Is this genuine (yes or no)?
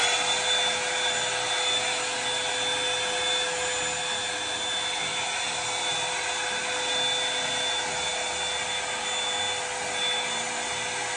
yes